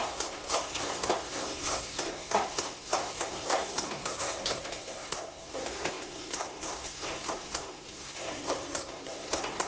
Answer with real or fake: fake